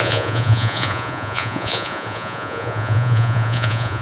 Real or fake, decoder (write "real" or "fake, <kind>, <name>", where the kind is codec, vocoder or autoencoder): fake, vocoder, Vocos